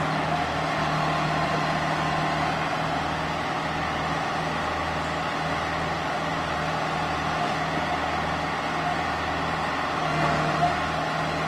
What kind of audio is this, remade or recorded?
recorded